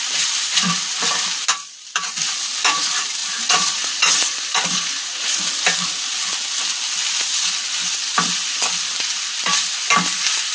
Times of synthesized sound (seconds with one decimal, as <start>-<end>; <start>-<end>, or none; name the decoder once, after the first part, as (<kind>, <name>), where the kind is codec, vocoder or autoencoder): 3.2-5.4 (vocoder, Vocos)